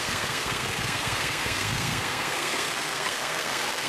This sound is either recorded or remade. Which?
remade